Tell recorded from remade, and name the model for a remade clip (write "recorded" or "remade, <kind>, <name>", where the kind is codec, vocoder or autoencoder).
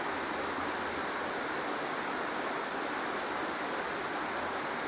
recorded